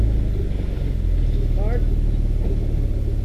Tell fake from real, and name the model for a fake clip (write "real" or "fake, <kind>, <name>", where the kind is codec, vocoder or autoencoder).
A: real